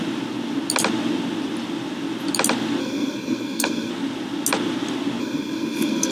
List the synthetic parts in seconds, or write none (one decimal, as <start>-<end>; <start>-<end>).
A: 2.8-3.9; 5.2-6.1